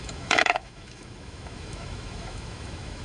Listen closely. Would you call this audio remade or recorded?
remade